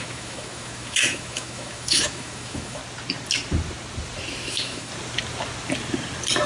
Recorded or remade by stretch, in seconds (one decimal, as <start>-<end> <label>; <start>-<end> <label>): 0.0-2.8 remade; 2.8-4.5 recorded; 4.5-4.9 remade; 4.9-6.5 recorded